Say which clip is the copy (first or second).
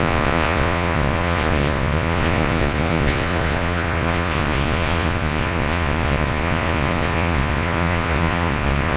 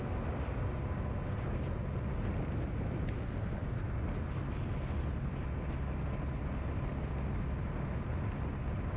first